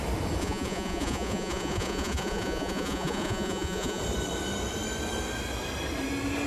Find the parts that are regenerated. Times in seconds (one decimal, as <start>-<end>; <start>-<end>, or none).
0.4-4.0

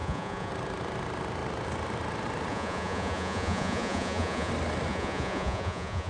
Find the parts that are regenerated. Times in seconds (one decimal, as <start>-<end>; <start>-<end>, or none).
0.0-0.5; 2.5-4.5; 4.9-6.1

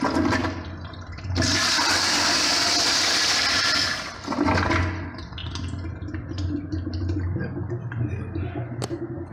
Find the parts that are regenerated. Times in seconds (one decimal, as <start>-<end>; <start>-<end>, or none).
0.4-4.1